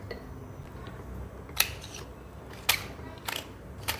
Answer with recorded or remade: recorded